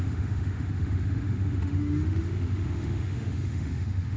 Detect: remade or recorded remade